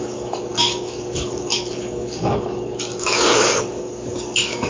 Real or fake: fake